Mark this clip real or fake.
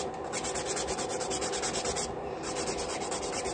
real